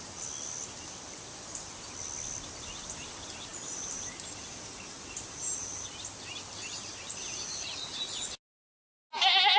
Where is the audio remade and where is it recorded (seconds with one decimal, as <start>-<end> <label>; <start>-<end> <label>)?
0.0-3.5 recorded; 3.5-5.9 remade; 5.9-6.9 recorded; 6.9-7.7 remade; 7.7-9.6 recorded